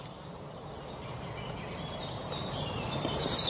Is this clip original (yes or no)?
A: yes